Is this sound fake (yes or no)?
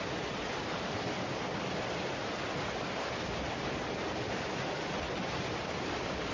no